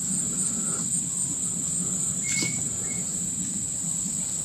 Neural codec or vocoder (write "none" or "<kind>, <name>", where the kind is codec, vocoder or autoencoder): none